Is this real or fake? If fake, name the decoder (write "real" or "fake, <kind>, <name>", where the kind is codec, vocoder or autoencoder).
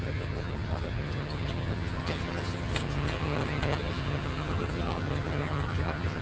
fake, vocoder, HiFi-GAN